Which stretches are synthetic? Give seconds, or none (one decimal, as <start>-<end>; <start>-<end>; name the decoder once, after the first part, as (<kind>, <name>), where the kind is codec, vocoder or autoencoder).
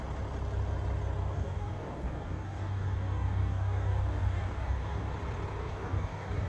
1.2-5.1 (codec, DAC); 5.6-6.5